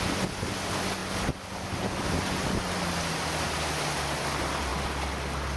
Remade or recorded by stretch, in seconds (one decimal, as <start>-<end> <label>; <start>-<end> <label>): 0.0-5.6 recorded